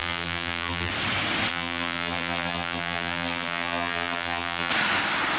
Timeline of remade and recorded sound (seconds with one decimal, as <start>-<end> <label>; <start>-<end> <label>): 0.0-0.9 remade; 0.9-1.5 recorded; 1.5-4.7 remade; 4.7-5.4 recorded